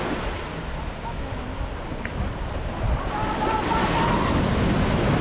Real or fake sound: real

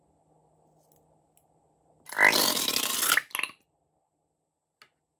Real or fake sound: real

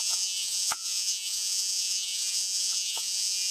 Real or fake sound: fake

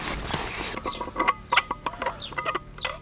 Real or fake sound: real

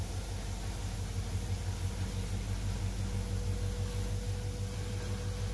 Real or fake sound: real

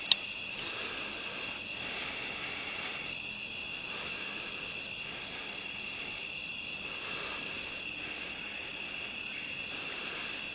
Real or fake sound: real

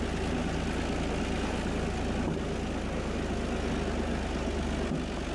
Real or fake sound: real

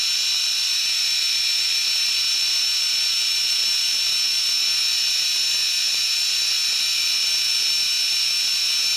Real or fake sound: real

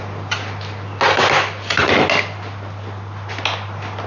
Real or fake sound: real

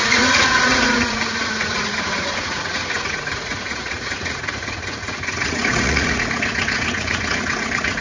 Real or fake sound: fake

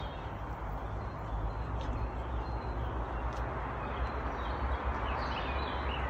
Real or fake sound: real